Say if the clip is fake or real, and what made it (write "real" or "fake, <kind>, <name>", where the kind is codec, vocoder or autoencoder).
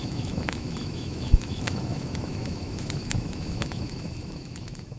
fake, autoencoder, DAC-VAE